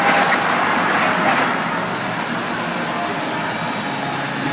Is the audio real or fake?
real